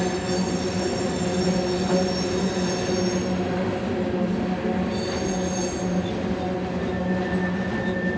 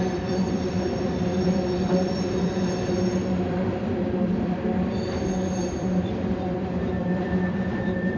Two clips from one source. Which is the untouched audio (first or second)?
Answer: first